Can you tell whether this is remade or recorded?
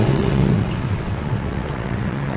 remade